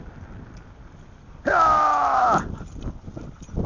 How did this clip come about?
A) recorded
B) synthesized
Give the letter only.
A